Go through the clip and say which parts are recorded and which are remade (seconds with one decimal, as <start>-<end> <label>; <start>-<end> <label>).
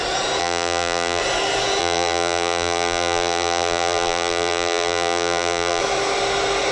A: 0.0-0.4 recorded; 0.4-1.2 remade; 1.2-1.8 recorded; 1.8-5.8 remade; 5.8-6.7 recorded